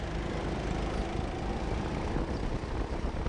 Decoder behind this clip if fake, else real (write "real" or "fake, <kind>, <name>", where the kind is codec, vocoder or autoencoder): real